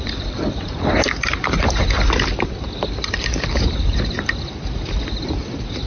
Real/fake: real